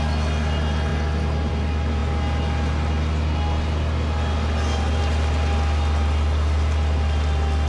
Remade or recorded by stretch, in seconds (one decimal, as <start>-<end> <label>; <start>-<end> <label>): 0.0-7.7 recorded